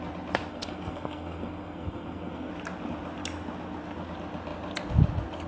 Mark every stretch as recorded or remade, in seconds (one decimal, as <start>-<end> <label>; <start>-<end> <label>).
0.0-0.5 recorded; 0.5-2.5 remade; 2.5-5.5 recorded